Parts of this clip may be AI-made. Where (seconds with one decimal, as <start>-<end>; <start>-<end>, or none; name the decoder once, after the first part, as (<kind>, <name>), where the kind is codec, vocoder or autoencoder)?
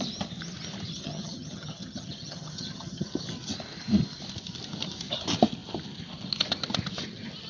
0.9-3.1 (vocoder, HiFi-GAN)